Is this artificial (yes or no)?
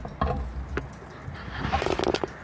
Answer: no